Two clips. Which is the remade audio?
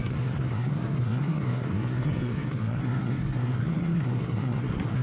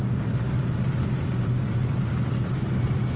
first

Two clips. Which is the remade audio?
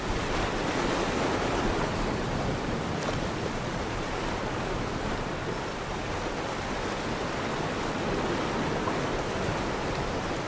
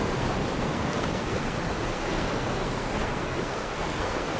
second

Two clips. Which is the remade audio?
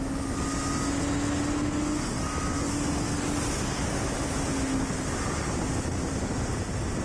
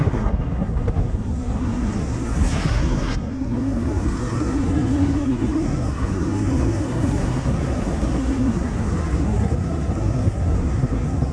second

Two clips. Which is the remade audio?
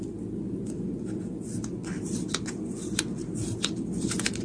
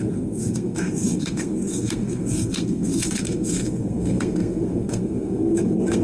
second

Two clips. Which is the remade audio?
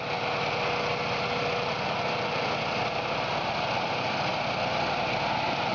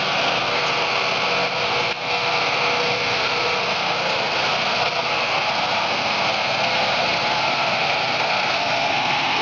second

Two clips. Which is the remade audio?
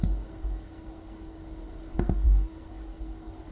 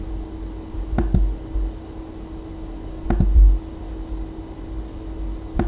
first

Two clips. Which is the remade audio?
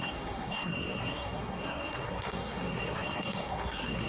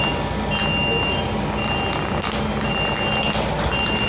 first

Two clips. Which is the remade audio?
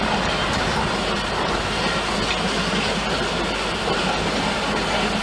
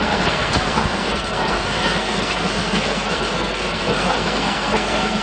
second